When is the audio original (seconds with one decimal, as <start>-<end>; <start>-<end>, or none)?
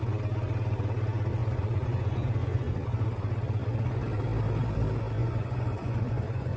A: 0.0-1.4; 2.7-5.2